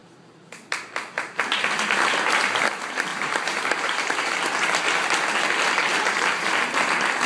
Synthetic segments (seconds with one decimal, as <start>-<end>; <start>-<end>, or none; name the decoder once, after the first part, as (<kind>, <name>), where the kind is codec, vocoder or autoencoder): 3.1-4.4 (vocoder, BigVGAN v2); 5.9-6.7